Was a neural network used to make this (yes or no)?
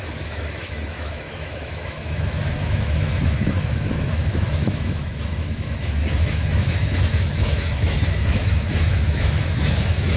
yes